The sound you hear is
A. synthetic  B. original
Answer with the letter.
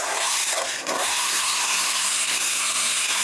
A